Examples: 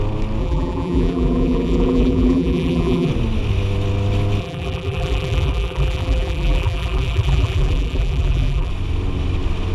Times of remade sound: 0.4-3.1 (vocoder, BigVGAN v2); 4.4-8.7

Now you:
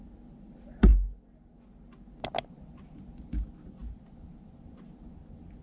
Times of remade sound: none

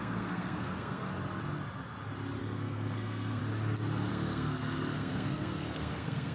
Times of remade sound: 0.0-1.0 (codec, SNAC); 2.4-3.4; 4.1-6.3

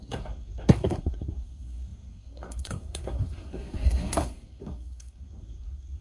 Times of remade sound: 0.0-6.0 (codec, SNAC)

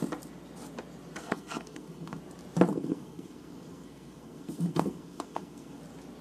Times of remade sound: 1.2-2.2 (codec, SNAC); 2.7-5.8

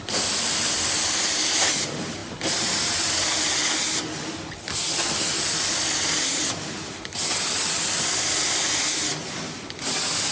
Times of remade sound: none

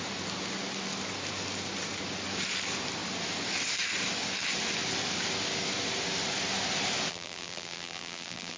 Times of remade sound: 7.1-8.6 (vocoder, BigVGAN v2)